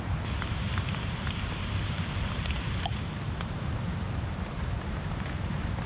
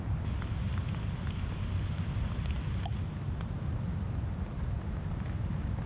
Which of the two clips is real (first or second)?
second